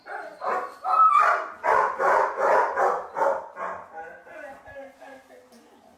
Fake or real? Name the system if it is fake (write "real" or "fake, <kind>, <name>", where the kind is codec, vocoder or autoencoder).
real